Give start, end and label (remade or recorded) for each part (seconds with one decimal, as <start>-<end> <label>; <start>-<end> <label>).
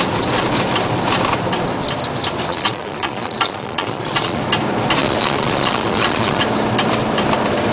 0.0-2.5 recorded; 2.5-4.4 remade; 4.4-5.0 recorded; 5.0-6.4 remade; 6.4-7.7 recorded